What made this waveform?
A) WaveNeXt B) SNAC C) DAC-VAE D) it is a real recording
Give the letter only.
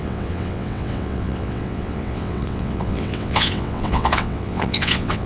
A